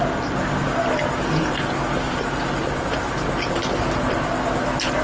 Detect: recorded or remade recorded